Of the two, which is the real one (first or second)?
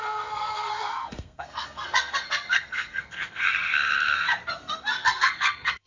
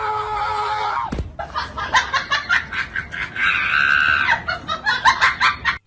second